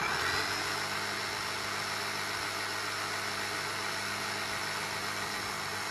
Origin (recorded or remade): recorded